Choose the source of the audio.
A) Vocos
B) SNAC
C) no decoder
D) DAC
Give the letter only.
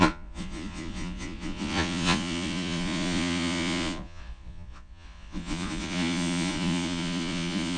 A